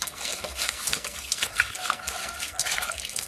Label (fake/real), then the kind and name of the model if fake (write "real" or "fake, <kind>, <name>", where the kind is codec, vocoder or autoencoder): fake, codec, SNAC